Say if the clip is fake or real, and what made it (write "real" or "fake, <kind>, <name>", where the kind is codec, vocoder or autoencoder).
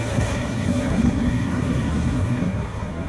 fake, codec, SNAC